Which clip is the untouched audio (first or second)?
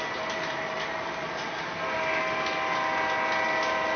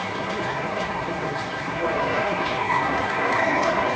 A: first